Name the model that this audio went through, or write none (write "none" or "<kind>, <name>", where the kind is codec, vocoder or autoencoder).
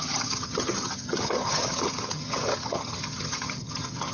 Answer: vocoder, HiFi-GAN